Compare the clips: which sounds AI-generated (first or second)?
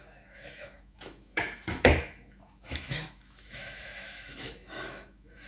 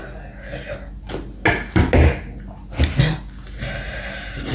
first